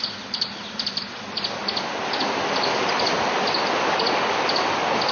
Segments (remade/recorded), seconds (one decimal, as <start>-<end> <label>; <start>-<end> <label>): 0.0-5.1 recorded